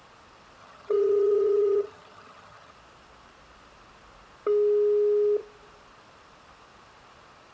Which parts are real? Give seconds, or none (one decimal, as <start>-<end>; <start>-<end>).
0.0-0.6; 2.7-7.5